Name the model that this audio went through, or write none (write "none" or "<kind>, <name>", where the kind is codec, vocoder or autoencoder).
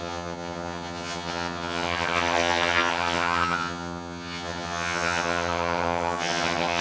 vocoder, HiFi-GAN